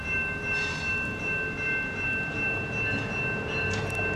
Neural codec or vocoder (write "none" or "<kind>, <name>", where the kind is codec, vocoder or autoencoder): none